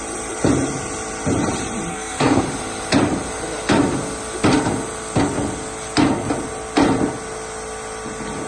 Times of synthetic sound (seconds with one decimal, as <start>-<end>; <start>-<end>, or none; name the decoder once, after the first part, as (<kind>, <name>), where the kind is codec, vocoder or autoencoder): 1.9-2.4 (codec, SNAC)